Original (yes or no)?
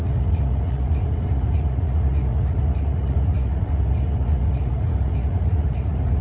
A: no